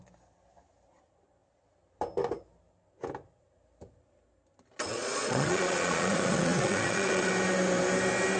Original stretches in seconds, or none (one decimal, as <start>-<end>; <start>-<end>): 0.0-4.9; 7.3-8.4